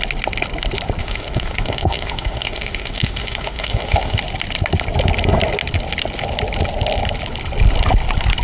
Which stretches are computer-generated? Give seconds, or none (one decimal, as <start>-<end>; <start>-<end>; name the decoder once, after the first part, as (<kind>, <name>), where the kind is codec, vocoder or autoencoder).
1.0-4.2 (autoencoder, DAC-VAE)